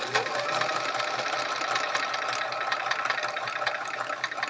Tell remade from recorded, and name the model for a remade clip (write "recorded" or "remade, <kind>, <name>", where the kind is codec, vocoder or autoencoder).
recorded